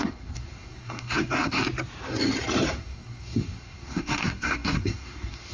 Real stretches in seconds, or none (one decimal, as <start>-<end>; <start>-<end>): 1.6-2.7

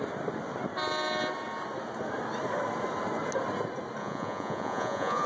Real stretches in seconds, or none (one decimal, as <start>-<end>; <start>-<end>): 0.0-4.0